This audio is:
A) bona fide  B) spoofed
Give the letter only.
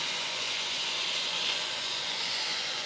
B